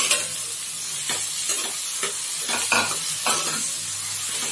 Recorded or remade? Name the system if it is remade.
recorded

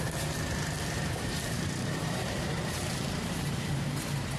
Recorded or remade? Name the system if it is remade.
remade, vocoder, BigVGAN v2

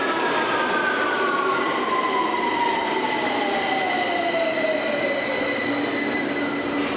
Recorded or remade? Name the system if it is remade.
recorded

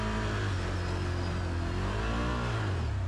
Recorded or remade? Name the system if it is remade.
recorded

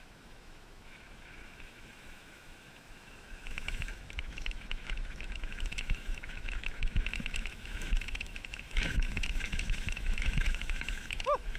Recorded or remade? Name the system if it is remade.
remade, autoencoder, DAC-VAE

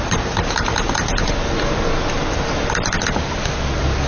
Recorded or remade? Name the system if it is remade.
recorded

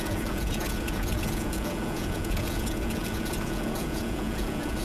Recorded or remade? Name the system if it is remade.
remade, vocoder, Vocos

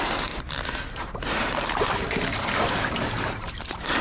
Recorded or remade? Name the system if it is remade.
remade, vocoder, BigVGAN v2